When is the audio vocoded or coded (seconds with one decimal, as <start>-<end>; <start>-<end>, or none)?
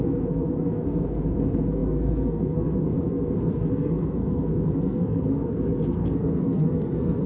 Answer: 0.0-7.3